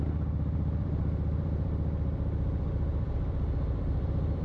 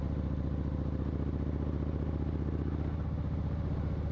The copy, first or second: first